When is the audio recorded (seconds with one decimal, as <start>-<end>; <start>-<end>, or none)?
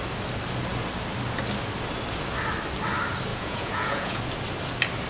0.0-3.3; 4.2-5.1